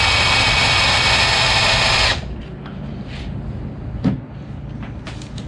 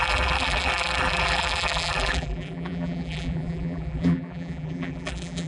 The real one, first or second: first